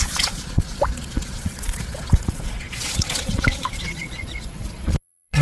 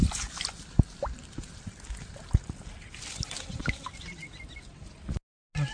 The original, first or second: second